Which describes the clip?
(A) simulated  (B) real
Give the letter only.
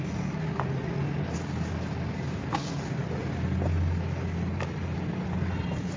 B